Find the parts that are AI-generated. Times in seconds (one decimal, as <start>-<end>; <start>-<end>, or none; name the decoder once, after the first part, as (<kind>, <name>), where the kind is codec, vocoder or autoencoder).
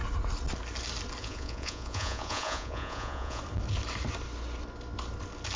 1.2-3.4 (vocoder, Vocos)